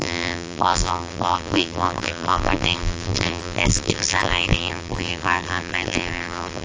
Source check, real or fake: fake